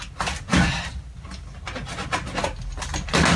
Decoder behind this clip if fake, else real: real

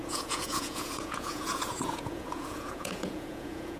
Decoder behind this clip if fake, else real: fake, vocoder, Vocos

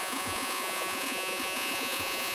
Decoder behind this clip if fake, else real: fake, vocoder, Vocos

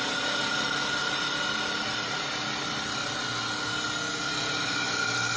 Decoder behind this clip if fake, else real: real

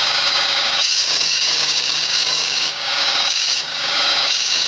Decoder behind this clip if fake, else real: fake, codec, DAC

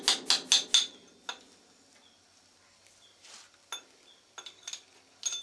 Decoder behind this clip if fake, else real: real